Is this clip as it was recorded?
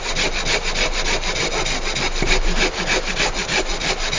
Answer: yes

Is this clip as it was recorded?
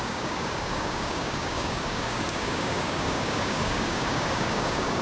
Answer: no